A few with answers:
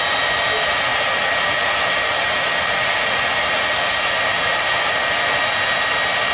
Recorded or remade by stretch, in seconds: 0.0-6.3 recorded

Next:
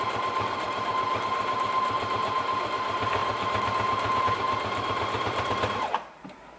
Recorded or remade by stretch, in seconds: 0.0-6.6 remade

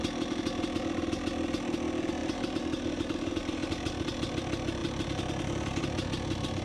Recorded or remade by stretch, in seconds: 0.0-2.2 recorded; 2.2-3.7 remade; 3.7-6.6 recorded